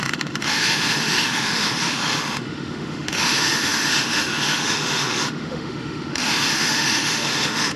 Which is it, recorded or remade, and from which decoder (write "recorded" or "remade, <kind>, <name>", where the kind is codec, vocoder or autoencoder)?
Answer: remade, autoencoder, DAC-VAE